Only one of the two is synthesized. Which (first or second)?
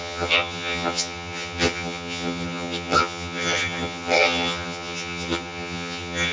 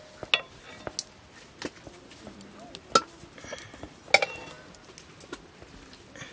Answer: first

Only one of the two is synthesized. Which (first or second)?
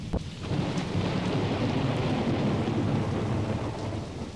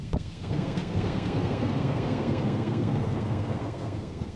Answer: second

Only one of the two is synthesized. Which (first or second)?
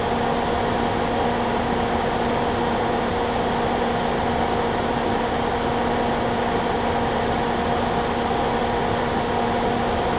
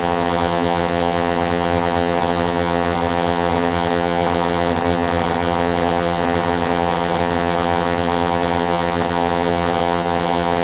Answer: second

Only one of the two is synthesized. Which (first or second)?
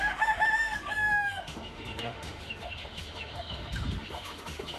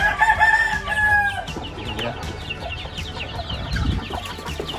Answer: first